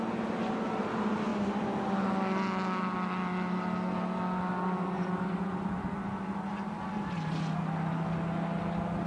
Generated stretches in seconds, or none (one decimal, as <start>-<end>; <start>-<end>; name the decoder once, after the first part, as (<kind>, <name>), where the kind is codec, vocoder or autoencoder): none